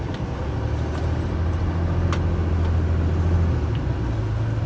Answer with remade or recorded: recorded